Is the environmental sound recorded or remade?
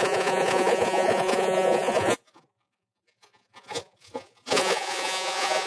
remade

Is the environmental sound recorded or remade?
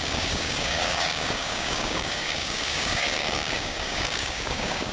remade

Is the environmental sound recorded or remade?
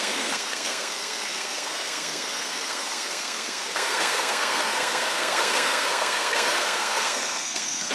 remade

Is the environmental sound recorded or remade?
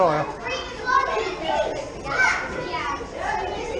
recorded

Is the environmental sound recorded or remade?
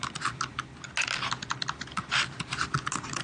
recorded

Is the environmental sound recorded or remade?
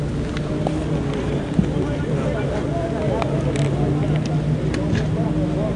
recorded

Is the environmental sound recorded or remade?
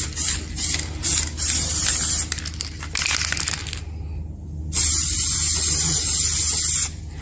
recorded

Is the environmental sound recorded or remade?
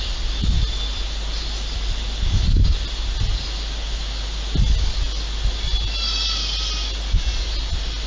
recorded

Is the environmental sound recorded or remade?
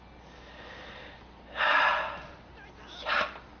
recorded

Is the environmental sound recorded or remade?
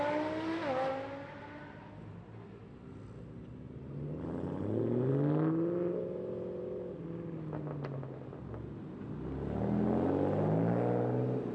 recorded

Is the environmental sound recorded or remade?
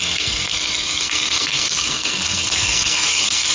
remade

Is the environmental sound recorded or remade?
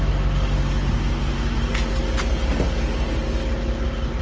recorded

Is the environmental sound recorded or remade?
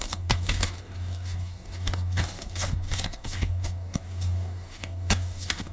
remade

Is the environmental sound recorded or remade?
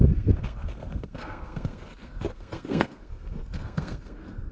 remade